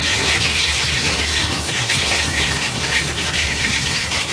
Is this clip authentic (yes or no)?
no